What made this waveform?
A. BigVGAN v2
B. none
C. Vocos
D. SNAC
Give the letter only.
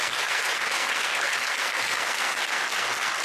D